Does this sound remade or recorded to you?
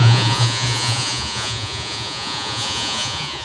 remade